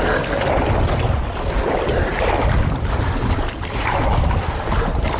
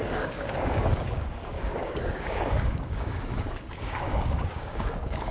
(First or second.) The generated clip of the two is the second